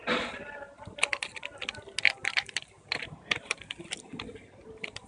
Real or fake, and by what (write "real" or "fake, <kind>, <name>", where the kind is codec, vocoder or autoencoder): real